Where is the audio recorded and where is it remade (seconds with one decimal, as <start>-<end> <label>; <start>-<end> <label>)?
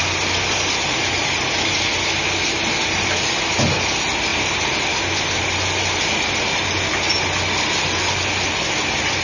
0.0-9.2 recorded